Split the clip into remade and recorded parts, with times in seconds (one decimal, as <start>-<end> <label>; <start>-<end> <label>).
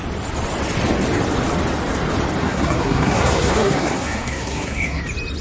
0.0-2.4 recorded; 2.4-5.0 remade; 5.0-5.4 recorded